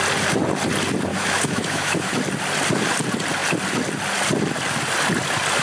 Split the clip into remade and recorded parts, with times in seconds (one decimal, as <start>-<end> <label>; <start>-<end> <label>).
0.0-1.1 recorded; 1.1-2.1 remade; 2.1-5.6 recorded